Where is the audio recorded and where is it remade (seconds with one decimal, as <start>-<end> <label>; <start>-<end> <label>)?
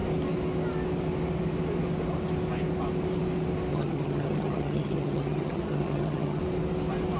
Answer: 0.0-3.7 recorded; 3.7-6.4 remade; 6.4-7.2 recorded